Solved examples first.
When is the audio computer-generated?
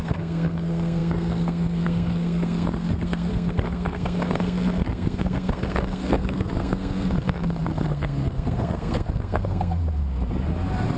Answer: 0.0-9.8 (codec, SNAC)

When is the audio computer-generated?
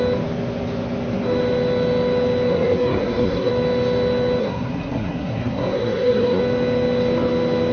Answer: 2.5-3.5 (codec, SNAC); 4.4-6.4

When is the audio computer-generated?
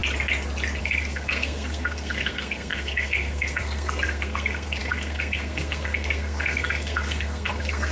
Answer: 0.8-7.9 (codec, SNAC)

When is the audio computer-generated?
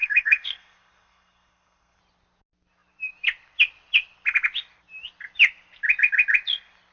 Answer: 0.0-2.0 (codec, SNAC)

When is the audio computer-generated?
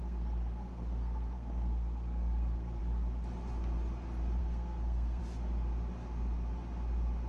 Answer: 0.0-2.8 (codec, SNAC); 4.4-5.2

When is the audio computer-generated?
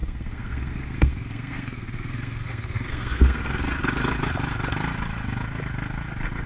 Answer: 0.0-3.4 (codec, SNAC)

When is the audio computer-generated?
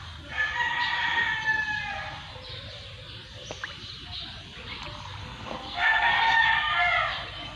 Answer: 5.2-6.4 (codec, SNAC)